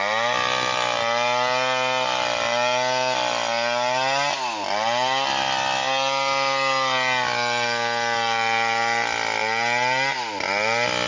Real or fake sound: real